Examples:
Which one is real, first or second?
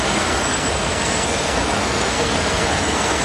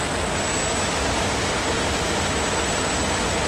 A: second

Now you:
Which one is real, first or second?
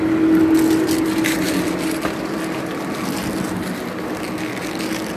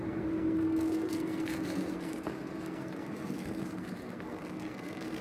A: first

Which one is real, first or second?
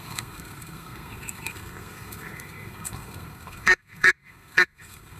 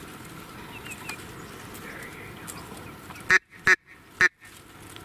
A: second